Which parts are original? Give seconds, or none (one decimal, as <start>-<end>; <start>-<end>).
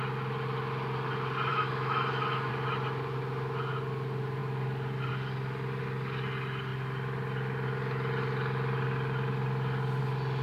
0.0-1.5; 2.5-10.4